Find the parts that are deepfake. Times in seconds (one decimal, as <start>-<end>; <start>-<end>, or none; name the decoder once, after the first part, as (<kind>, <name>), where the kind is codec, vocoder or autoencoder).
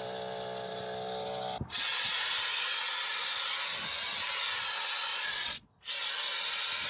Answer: 5.1-5.7 (vocoder, Vocos)